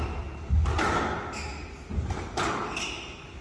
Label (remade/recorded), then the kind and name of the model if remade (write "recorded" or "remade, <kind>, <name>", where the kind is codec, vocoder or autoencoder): recorded